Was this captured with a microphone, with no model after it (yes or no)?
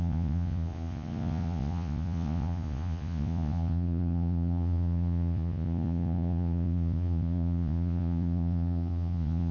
no